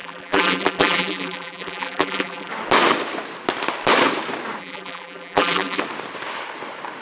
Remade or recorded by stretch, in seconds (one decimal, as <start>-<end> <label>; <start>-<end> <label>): 0.0-2.5 remade; 2.5-4.6 recorded; 4.6-5.8 remade; 5.8-7.0 recorded